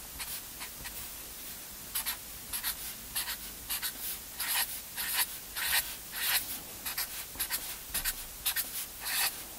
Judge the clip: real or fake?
real